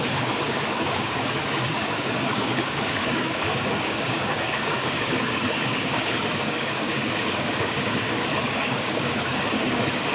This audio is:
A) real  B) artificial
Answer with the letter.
B